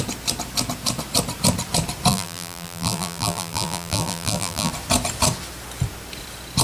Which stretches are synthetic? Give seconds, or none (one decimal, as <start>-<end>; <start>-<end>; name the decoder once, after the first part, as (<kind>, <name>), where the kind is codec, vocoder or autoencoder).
2.1-4.7 (vocoder, BigVGAN v2)

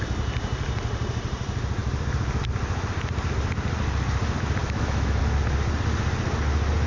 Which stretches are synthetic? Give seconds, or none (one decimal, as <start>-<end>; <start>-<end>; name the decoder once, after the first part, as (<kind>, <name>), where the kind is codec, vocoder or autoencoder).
4.6-5.2 (autoencoder, DAC-VAE)

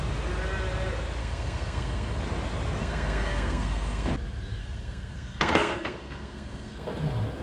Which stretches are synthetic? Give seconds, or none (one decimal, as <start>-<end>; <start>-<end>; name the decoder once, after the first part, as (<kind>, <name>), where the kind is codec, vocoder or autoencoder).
1.2-2.2 (codec, SNAC); 2.8-4.1; 4.6-6.9